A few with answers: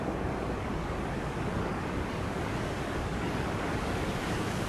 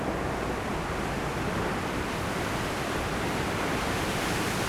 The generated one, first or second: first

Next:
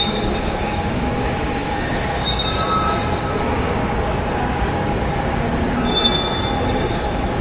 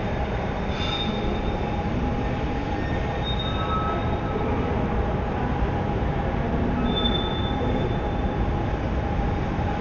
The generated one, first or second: first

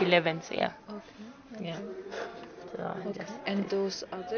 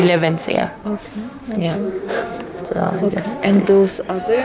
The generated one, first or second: second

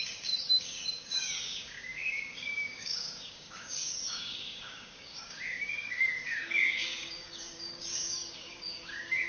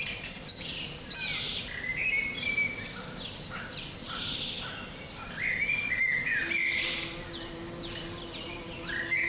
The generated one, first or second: first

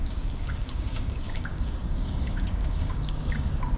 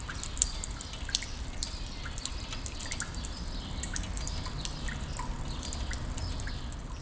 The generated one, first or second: first